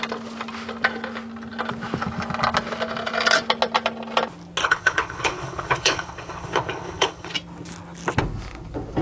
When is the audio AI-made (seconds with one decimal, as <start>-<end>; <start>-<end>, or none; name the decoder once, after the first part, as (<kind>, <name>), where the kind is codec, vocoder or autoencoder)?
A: 4.6-7.3 (codec, HILCodec)